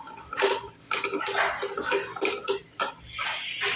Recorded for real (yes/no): yes